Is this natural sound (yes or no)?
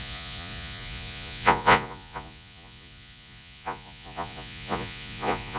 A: no